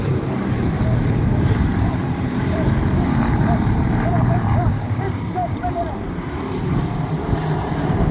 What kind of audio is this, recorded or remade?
remade